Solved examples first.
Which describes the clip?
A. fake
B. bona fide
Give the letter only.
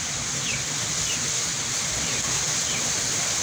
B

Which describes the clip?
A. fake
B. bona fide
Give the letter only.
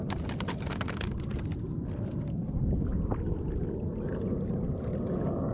B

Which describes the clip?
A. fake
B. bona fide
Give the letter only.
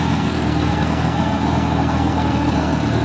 A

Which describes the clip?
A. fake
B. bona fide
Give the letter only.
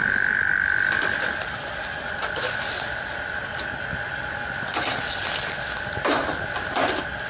B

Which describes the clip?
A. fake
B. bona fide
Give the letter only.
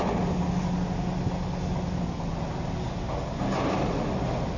B